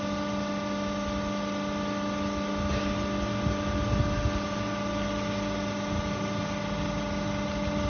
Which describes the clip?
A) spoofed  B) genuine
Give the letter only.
B